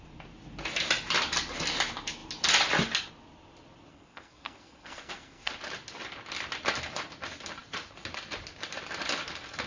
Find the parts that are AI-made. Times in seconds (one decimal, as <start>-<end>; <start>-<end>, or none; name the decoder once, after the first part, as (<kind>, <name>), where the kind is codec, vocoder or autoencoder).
3.9-5.5 (codec, SNAC)